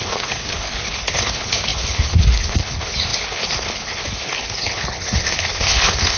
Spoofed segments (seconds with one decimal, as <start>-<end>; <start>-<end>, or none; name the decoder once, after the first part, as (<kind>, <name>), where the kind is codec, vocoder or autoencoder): 0.0-6.2 (codec, HILCodec)